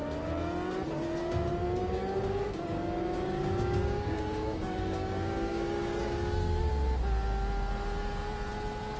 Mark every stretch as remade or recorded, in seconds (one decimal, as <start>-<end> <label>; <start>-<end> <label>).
0.0-1.8 recorded; 1.8-6.7 remade; 6.7-9.0 recorded